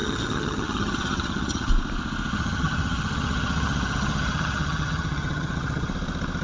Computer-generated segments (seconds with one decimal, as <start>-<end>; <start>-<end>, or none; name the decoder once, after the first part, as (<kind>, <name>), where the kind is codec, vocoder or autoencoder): 0.0-1.7 (vocoder, HiFi-GAN); 2.3-5.9